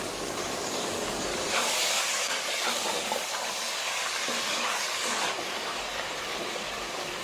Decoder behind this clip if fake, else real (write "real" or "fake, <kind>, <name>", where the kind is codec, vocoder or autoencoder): fake, codec, DAC